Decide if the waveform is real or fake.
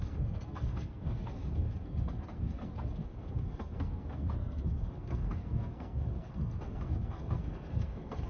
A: fake